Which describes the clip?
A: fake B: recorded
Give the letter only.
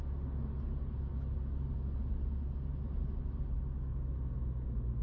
B